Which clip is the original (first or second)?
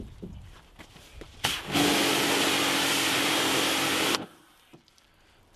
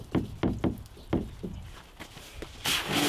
second